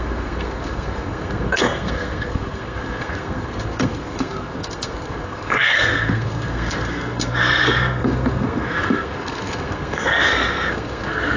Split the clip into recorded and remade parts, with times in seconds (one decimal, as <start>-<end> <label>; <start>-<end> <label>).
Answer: 0.0-11.4 remade